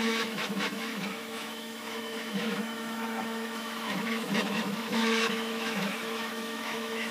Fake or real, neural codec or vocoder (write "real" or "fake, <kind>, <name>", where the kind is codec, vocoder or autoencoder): fake, autoencoder, DAC-VAE